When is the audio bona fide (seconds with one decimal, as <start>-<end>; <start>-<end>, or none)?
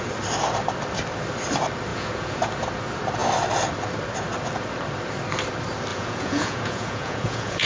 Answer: 0.0-1.9; 2.5-5.9